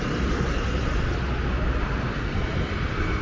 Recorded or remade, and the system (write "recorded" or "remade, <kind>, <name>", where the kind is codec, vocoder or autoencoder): recorded